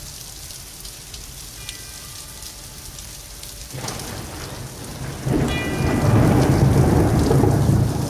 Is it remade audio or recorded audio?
recorded